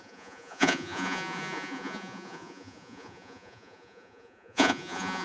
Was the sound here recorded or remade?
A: remade